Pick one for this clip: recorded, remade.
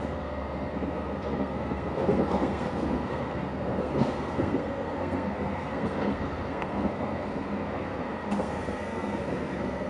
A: remade